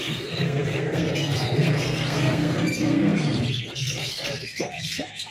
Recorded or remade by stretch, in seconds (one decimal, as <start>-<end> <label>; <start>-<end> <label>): 0.0-5.3 remade